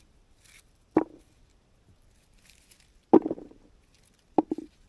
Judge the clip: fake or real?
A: real